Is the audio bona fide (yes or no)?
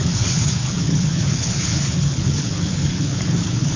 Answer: no